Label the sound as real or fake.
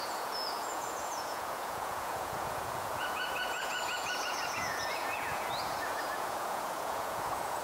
fake